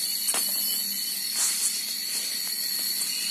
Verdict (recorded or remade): remade